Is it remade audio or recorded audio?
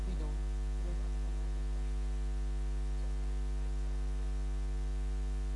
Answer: recorded